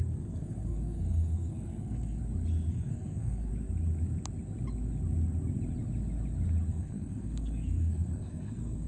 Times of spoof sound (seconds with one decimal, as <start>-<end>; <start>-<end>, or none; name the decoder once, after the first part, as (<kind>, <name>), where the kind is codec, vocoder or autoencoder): 0.0-2.2 (codec, SNAC); 2.7-3.5; 6.7-8.9